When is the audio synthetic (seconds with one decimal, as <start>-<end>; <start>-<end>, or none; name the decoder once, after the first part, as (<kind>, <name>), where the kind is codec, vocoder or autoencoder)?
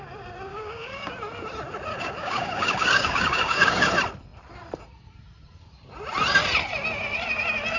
0.5-1.1 (codec, DAC); 1.9-3.9